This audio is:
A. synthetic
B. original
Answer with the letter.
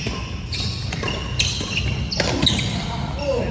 B